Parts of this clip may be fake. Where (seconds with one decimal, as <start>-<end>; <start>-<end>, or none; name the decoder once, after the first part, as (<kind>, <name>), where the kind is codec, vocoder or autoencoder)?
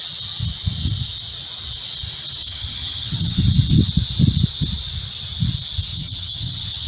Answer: 2.4-3.4 (vocoder, HiFi-GAN); 5.9-6.9